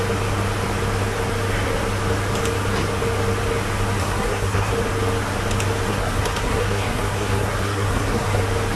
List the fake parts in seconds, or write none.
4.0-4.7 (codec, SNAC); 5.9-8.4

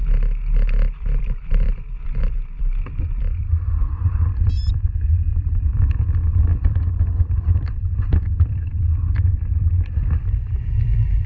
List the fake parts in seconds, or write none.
0.0-11.3 (vocoder, BigVGAN v2)

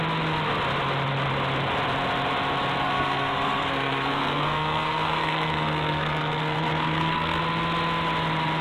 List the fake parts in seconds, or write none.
2.8-7.4 (codec, SNAC)

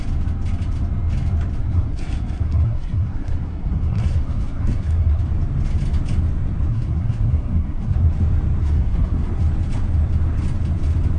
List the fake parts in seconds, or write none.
1.6-5.2 (codec, SNAC); 6.7-8.1; 8.6-9.4

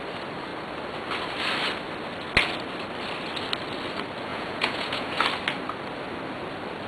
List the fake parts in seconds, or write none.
4.3-5.2 (vocoder, Vocos)

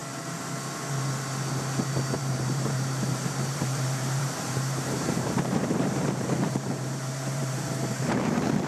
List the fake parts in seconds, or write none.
2.2-8.7 (vocoder, BigVGAN v2)

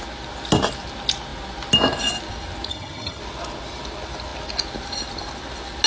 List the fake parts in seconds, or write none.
2.7-3.2 (vocoder, HiFi-GAN)